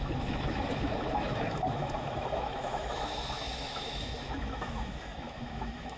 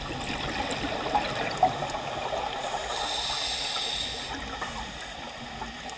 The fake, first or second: first